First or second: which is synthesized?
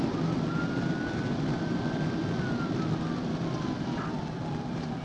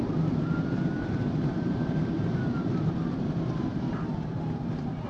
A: second